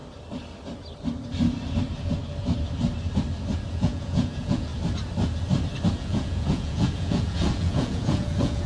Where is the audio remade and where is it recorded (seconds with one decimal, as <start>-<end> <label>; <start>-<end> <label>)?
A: 0.0-3.7 recorded; 3.7-4.7 remade; 4.7-5.9 recorded; 5.9-8.7 remade